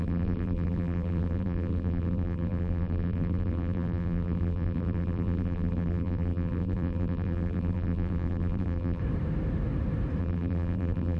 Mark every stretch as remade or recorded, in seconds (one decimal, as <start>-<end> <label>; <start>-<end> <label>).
0.0-9.0 remade; 9.0-10.2 recorded; 10.2-11.2 remade